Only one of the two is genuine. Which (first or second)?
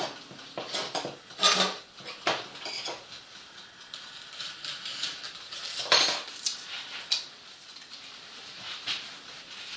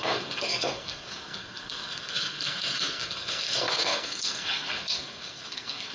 first